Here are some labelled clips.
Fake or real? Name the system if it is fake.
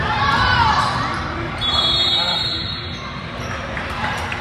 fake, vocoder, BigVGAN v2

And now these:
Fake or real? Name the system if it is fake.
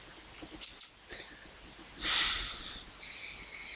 real